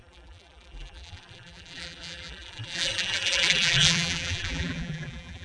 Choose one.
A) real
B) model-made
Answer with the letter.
B